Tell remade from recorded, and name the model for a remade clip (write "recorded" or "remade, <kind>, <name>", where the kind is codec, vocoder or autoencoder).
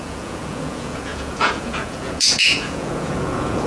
remade, vocoder, Vocos